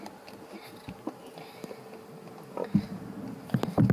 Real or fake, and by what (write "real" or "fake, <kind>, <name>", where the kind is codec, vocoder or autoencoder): real